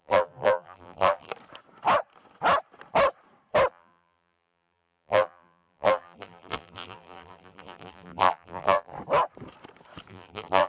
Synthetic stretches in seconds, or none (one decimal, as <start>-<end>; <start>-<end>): 0.0-1.3; 3.7-8.9; 10.1-10.7